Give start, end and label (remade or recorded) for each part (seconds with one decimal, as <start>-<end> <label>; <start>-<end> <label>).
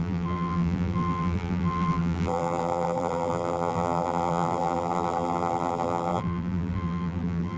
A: 0.0-7.6 remade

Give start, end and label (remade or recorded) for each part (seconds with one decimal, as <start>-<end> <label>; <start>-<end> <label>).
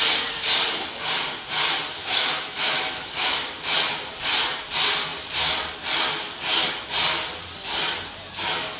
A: 0.0-2.0 recorded; 2.0-3.3 remade; 3.3-8.8 recorded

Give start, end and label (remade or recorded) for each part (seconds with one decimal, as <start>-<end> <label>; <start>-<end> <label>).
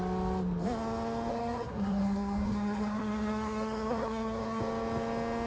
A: 0.0-1.3 recorded; 1.3-4.6 remade; 4.6-5.5 recorded